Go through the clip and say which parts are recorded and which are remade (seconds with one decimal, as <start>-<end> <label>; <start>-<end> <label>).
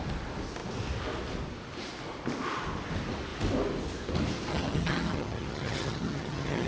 0.0-4.5 recorded; 4.5-6.7 remade